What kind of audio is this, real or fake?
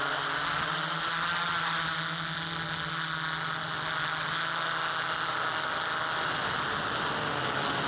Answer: real